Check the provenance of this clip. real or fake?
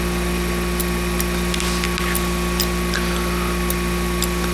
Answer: real